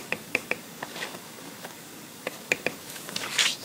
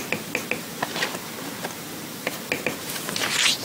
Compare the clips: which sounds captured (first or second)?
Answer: second